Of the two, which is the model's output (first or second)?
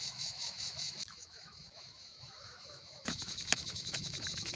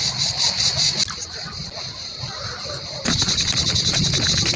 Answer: first